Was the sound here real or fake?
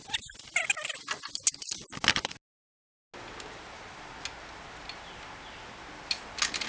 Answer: real